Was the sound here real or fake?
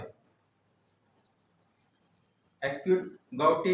real